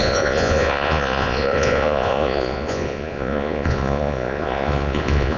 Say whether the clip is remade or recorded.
remade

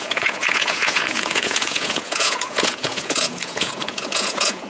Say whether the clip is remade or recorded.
remade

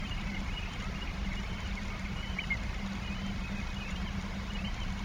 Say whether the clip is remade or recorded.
recorded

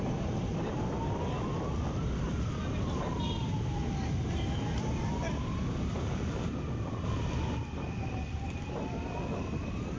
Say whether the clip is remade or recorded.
recorded